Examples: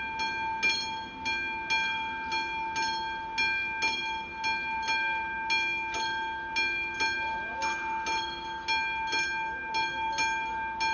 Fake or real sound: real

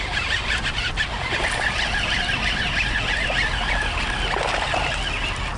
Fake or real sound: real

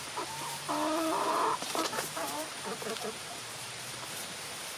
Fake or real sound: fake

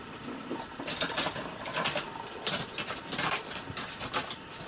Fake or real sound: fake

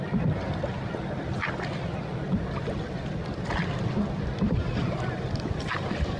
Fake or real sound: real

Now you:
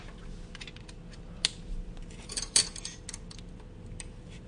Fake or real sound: real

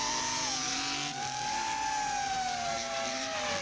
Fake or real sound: real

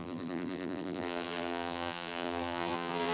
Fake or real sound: fake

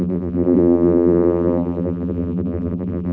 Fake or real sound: fake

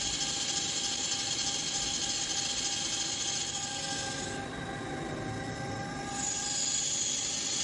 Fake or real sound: real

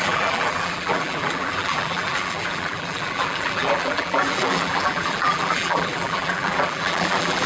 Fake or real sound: fake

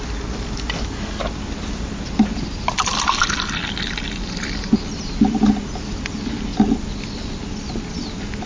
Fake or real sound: real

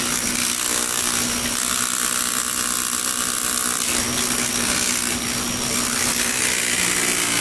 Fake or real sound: real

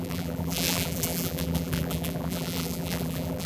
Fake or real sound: fake